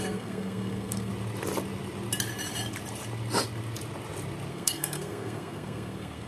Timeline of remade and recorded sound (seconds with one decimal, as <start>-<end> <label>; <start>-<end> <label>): 0.0-1.1 remade; 1.1-4.5 recorded; 4.5-6.3 remade

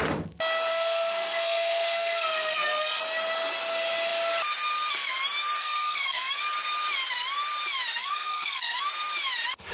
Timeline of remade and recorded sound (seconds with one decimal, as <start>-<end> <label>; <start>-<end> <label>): 0.0-0.7 recorded; 0.7-3.0 remade; 3.0-5.6 recorded; 5.6-6.4 remade; 6.4-8.0 recorded; 8.0-8.8 remade; 8.8-9.7 recorded

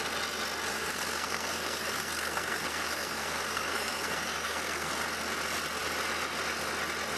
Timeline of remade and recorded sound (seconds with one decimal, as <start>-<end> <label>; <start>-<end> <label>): 0.0-0.7 recorded; 0.7-4.9 remade; 4.9-7.2 recorded

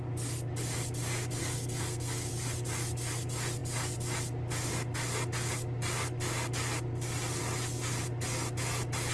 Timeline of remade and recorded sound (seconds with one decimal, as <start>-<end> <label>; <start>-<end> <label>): 0.0-1.4 recorded; 1.4-2.3 remade; 2.3-9.1 recorded

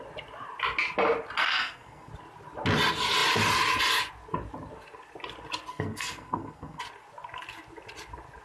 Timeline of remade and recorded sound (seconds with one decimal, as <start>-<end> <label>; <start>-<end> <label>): 0.0-1.4 recorded; 1.4-2.1 remade; 2.1-5.7 recorded; 5.7-6.8 remade; 6.8-8.4 recorded

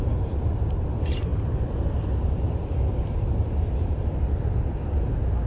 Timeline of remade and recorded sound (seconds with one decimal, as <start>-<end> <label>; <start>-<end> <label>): 0.0-5.5 recorded

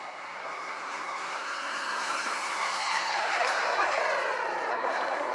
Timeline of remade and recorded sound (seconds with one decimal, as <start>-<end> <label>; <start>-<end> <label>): 0.0-4.0 remade; 4.0-4.7 recorded; 4.7-5.3 remade

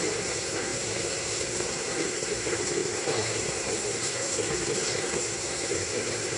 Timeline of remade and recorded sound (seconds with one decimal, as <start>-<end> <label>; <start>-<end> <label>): 0.0-6.4 remade